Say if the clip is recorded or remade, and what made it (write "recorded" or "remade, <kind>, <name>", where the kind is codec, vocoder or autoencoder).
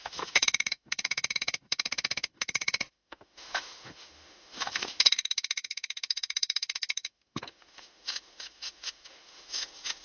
remade, autoencoder, DAC-VAE